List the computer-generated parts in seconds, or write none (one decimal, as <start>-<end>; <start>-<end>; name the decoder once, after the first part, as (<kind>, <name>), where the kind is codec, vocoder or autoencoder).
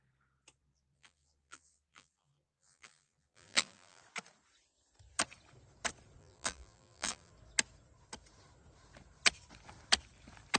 0.6-4.0 (vocoder, BigVGAN v2); 6.2-7.3